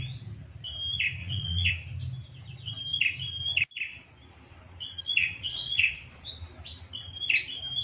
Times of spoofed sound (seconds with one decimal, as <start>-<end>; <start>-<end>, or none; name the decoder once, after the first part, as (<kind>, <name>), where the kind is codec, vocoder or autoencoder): 1.2-1.7 (vocoder, Vocos); 5.2-6.3

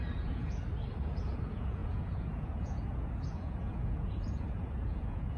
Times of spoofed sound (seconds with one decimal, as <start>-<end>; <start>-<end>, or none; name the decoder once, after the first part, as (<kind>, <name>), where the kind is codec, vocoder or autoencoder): 0.0-0.6 (vocoder, Vocos); 1.2-5.4

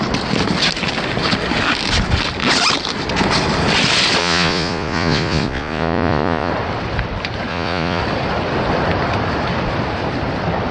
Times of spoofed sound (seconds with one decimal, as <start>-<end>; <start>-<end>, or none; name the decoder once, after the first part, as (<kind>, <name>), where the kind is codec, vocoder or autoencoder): 4.2-6.5 (vocoder, Vocos); 7.5-8.0

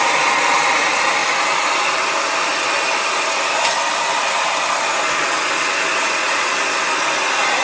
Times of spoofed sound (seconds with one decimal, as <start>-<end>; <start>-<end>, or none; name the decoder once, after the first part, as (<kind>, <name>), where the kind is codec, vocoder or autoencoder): 5.9-6.5 (vocoder, Vocos)

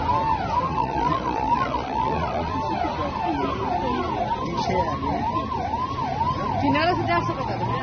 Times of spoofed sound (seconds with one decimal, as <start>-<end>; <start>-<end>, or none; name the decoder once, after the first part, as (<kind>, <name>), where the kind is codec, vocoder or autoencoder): 0.7-2.5 (vocoder, Vocos)

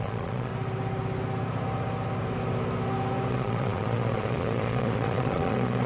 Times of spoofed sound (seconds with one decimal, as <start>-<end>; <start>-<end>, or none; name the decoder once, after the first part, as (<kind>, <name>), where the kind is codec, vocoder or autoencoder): 0.0-0.5 (vocoder, Vocos); 3.3-5.9